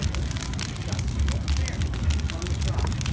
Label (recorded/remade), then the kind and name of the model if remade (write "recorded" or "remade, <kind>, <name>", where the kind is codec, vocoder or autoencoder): recorded